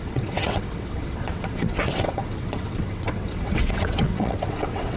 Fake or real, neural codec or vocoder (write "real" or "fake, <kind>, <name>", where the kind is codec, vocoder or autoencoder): fake, vocoder, WaveNeXt